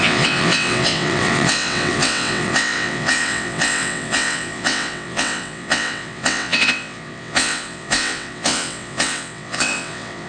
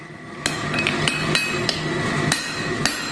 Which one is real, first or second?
second